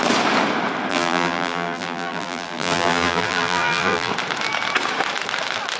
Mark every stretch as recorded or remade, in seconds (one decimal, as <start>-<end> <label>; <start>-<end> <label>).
0.0-0.9 recorded; 0.9-4.1 remade; 4.1-5.8 recorded